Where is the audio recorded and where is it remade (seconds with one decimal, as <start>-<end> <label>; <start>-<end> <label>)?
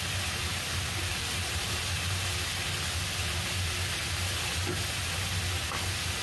0.0-0.5 recorded; 0.5-1.8 remade; 1.8-3.4 recorded; 3.4-4.0 remade; 4.0-6.2 recorded